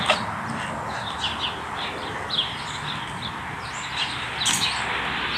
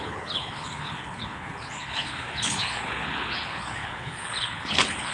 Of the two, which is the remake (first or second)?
second